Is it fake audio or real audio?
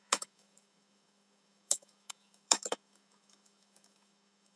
fake